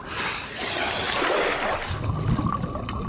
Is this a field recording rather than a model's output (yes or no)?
yes